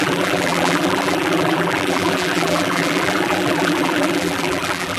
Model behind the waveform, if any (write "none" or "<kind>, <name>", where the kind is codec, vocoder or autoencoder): vocoder, BigVGAN v2